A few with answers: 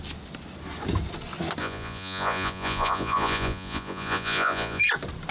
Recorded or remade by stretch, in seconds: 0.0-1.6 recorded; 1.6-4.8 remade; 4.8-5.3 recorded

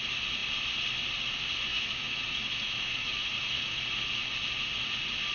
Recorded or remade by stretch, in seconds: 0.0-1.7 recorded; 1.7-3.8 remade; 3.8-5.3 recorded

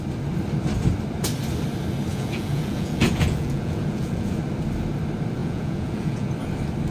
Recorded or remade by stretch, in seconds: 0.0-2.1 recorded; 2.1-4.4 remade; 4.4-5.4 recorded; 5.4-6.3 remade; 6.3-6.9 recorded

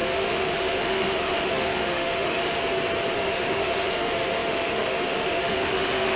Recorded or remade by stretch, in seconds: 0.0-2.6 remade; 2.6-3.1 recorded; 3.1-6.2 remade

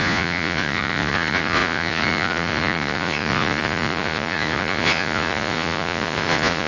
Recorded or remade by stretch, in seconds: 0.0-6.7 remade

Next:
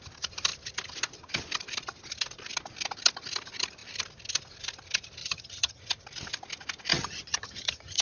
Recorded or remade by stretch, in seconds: 0.0-5.2 recorded; 5.2-5.8 remade; 5.8-6.9 recorded; 6.9-8.0 remade

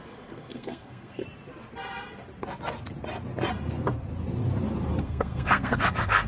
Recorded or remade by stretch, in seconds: 0.0-1.2 remade; 1.2-5.0 recorded; 5.0-6.3 remade

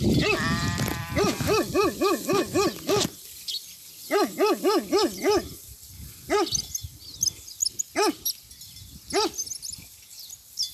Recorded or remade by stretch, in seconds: 0.0-10.7 recorded